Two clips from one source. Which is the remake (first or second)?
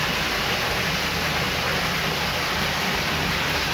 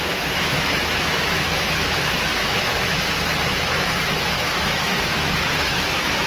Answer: second